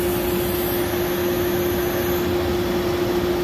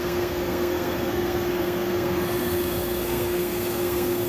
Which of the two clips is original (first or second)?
first